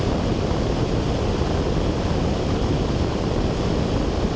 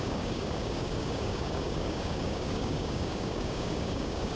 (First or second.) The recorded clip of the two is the first